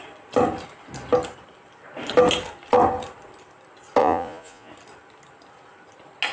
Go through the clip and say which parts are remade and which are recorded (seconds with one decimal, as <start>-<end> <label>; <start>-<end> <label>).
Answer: 0.0-4.0 recorded; 4.0-4.7 remade; 4.7-6.3 recorded